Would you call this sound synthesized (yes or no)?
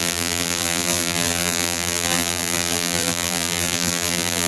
yes